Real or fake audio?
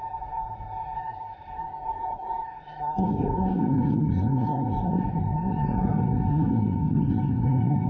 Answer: fake